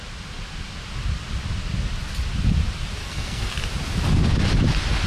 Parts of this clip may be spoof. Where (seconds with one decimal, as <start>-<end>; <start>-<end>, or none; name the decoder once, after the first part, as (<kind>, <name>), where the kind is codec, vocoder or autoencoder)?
3.0-3.5 (codec, SNAC)